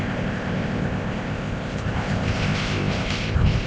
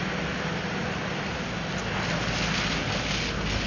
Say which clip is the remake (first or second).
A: first